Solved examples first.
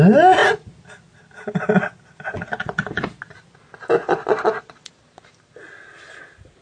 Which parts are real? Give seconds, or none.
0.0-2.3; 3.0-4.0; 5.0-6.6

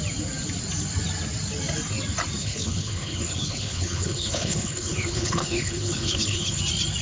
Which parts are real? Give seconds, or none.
0.0-2.4; 6.6-7.0

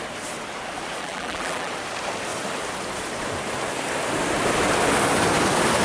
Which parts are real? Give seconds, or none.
0.0-1.0; 1.7-5.8

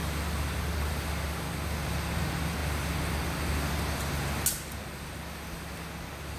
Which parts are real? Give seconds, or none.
0.0-6.4

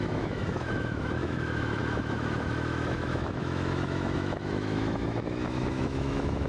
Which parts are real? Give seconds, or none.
none

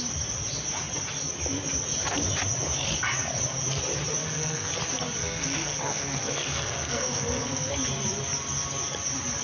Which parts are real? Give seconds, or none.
0.0-4.2; 4.7-5.2; 7.7-9.4

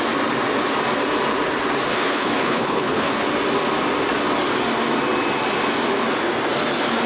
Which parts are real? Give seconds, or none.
0.0-1.9; 3.1-7.1

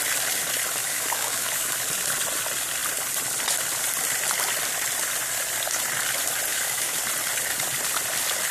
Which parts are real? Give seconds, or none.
0.0-0.8; 1.8-6.5; 7.0-8.5